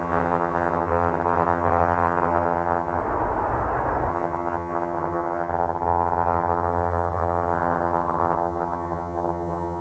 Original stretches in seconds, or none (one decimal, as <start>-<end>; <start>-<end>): 3.0-4.1